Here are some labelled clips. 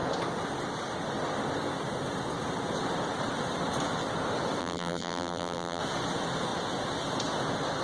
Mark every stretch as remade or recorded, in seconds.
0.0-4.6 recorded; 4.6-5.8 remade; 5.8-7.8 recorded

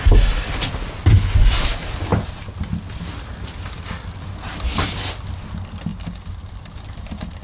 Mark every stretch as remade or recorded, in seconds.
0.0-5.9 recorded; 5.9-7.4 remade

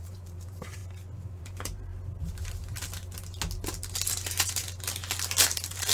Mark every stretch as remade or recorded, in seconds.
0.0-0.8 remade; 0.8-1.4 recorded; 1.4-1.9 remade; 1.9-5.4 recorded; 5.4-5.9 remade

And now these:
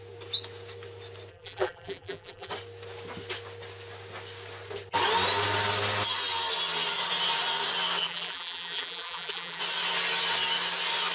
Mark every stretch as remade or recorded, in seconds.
0.0-1.3 recorded; 1.3-2.5 remade; 2.5-8.0 recorded; 8.0-9.6 remade; 9.6-11.1 recorded

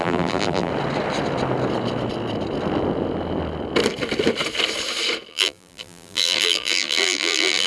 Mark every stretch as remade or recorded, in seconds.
0.0-0.7 remade; 0.7-5.3 recorded; 5.3-7.7 remade

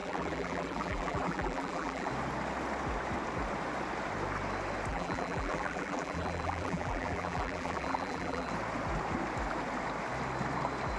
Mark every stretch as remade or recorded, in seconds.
0.0-2.1 remade; 2.1-4.9 recorded; 4.9-8.5 remade; 8.5-11.0 recorded

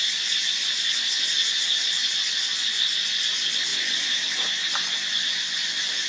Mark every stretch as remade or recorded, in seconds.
0.0-1.3 recorded; 1.3-2.1 remade; 2.1-6.1 recorded